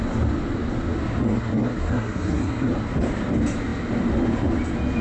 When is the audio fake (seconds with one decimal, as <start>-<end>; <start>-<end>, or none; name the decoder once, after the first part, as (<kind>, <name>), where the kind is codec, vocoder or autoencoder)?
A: 1.2-2.7 (codec, SNAC)